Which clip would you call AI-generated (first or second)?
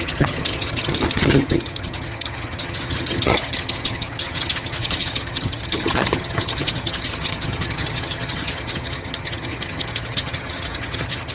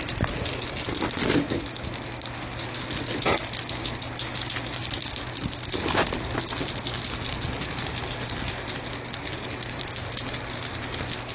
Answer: first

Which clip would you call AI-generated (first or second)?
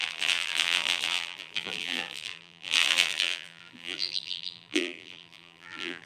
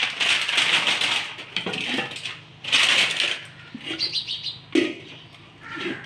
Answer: first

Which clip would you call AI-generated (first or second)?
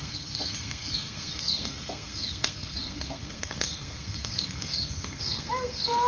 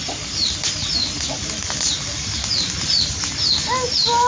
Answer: first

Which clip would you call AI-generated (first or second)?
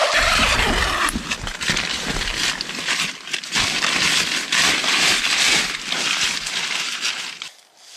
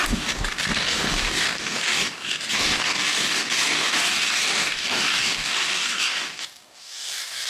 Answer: second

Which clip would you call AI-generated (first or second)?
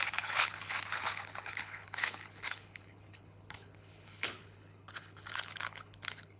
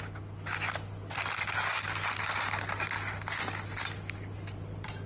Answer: first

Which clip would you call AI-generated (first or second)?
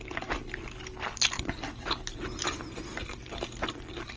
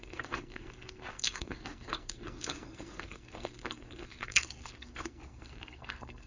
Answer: second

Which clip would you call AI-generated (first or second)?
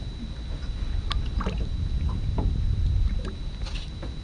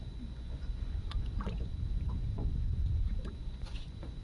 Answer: second